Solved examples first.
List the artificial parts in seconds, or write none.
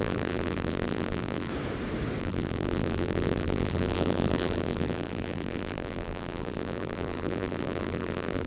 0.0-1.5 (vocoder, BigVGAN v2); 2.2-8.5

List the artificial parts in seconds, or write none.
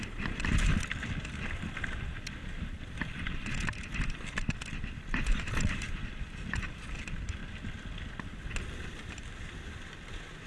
2.4-6.1 (vocoder, BigVGAN v2)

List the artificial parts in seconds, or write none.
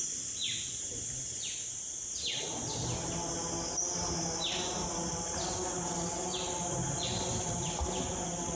0.4-2.6 (vocoder, BigVGAN v2)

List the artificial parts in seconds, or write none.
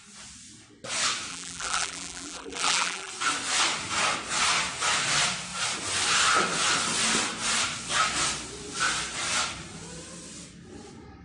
1.3-3.1 (vocoder, BigVGAN v2)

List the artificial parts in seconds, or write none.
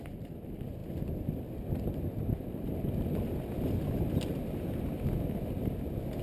none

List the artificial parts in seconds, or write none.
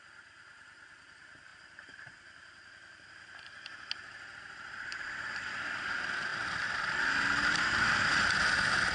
none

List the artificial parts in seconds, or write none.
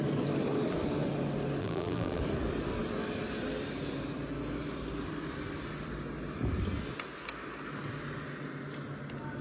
1.6-2.2 (vocoder, BigVGAN v2)